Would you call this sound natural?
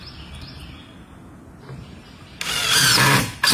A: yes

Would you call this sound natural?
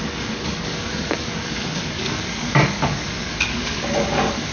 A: no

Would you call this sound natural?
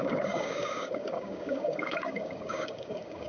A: no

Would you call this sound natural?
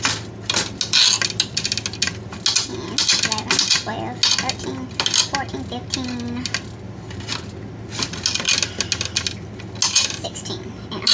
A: yes